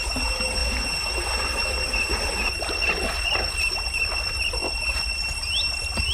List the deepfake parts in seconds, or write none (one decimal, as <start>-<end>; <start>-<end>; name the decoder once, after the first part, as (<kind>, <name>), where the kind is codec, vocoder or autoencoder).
none